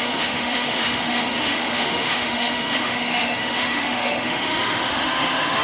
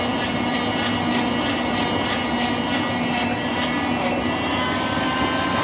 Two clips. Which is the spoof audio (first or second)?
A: first